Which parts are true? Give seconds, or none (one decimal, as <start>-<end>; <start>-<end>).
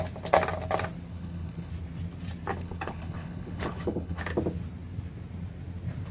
0.0-1.1; 1.7-2.5; 4.2-6.1